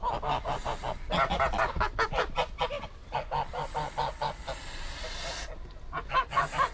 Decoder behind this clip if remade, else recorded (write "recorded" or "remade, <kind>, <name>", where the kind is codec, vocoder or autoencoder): recorded